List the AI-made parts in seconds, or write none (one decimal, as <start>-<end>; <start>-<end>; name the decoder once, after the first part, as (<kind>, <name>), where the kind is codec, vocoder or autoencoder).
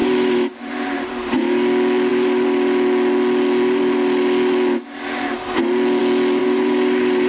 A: 0.0-1.3 (vocoder, BigVGAN v2); 6.4-7.3